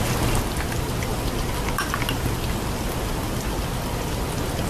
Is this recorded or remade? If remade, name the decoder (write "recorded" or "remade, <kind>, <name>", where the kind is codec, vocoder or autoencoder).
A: recorded